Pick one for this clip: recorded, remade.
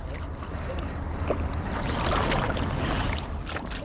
recorded